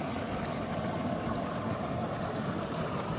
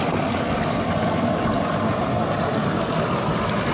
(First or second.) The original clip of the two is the second